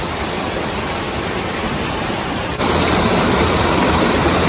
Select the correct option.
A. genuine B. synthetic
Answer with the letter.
A